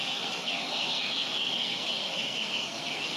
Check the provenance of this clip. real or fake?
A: fake